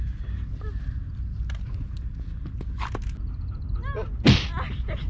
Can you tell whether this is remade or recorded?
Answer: recorded